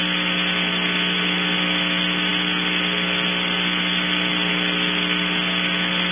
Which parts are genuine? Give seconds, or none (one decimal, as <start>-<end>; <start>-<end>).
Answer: 0.0-6.1